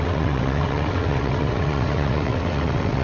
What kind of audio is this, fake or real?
fake